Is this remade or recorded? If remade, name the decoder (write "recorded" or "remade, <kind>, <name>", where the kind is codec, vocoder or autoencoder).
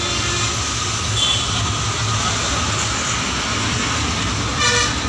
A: recorded